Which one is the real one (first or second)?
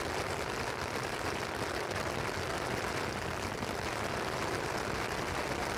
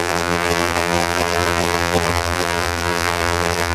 first